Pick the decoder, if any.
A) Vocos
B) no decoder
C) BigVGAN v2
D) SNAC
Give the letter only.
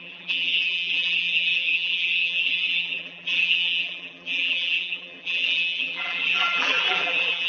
C